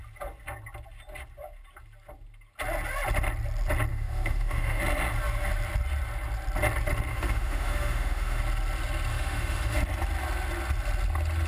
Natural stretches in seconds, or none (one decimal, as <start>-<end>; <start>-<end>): 0.0-3.9; 4.8-7.1; 8.4-9.1; 9.8-11.5